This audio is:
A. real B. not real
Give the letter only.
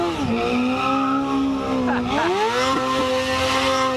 A